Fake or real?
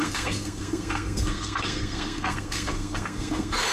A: fake